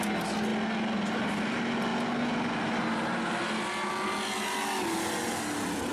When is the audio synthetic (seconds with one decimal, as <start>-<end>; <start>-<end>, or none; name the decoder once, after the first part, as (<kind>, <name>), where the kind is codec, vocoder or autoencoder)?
none